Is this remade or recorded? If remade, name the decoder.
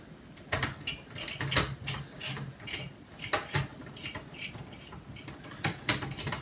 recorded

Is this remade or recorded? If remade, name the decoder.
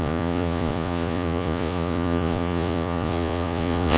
remade, vocoder, Vocos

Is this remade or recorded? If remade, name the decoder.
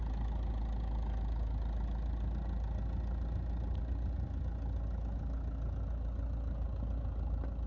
recorded